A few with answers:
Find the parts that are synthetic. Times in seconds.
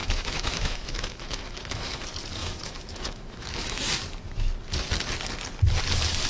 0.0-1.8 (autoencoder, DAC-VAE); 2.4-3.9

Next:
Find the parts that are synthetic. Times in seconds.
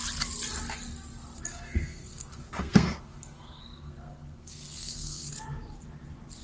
1.5-5.3 (codec, SNAC)